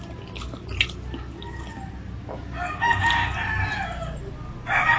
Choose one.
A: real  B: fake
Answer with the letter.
A